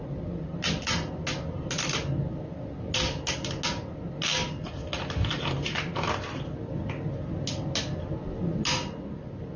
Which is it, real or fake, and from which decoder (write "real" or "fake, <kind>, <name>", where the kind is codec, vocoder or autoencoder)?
real